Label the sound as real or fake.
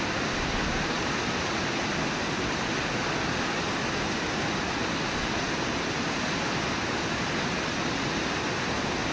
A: real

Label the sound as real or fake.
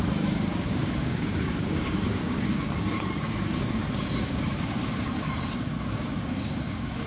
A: fake